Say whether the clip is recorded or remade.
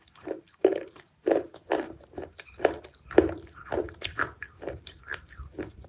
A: remade